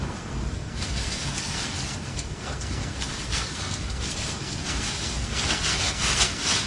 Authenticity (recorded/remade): remade